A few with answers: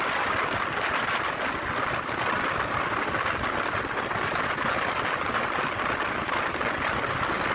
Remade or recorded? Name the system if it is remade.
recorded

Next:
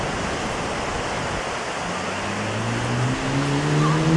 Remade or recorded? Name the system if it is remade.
recorded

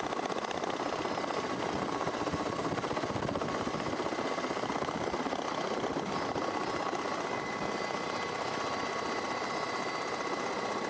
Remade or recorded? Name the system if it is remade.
recorded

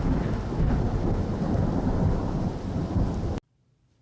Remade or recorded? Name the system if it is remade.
recorded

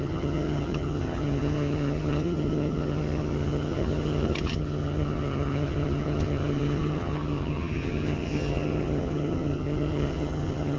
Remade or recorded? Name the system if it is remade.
remade, vocoder, HiFi-GAN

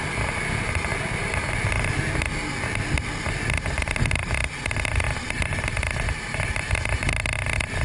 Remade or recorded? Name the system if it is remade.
recorded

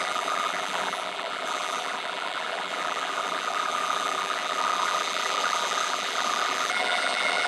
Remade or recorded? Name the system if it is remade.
remade, vocoder, BigVGAN v2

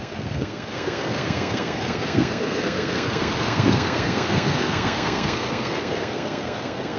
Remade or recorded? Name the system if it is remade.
remade, codec, SNAC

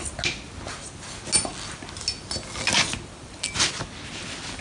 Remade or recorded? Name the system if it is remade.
recorded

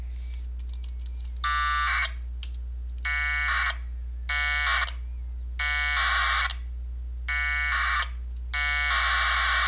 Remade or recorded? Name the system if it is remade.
recorded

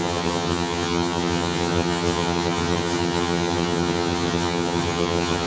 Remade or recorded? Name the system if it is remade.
remade, vocoder, HiFi-GAN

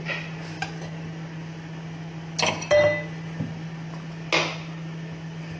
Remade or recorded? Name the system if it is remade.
recorded